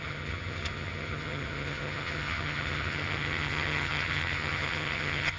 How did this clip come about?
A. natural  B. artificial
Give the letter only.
B